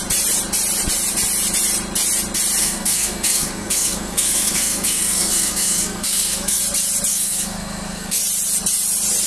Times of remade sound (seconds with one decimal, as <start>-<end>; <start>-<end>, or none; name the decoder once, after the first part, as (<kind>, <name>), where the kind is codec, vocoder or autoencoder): 2.6-6.6 (codec, SNAC); 7.1-8.2